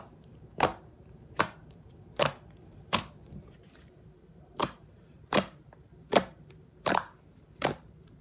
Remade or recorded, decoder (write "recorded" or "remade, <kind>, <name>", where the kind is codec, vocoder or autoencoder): remade, vocoder, BigVGAN v2